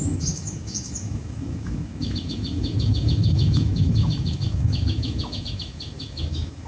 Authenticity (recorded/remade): remade